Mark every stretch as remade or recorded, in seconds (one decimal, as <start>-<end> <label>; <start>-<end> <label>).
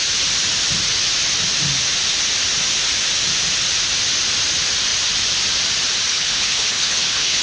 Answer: 0.0-6.1 recorded; 6.1-7.4 remade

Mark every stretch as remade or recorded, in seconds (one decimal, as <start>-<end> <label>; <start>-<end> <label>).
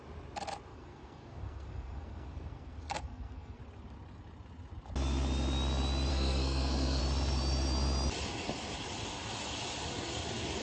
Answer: 0.0-0.7 recorded; 0.7-3.6 remade; 3.6-6.1 recorded; 6.1-7.0 remade; 7.0-10.6 recorded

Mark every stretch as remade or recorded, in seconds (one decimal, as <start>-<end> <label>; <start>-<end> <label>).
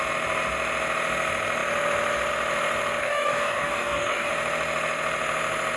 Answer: 0.0-3.0 recorded; 3.0-4.3 remade; 4.3-5.8 recorded